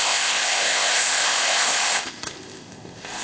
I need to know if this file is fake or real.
fake